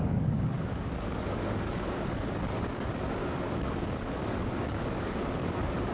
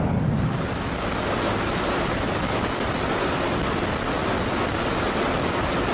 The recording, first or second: second